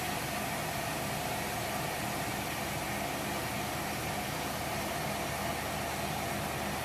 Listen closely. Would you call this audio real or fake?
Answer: real